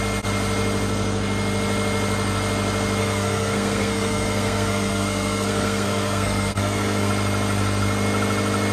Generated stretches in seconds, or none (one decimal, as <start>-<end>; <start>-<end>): 3.0-7.1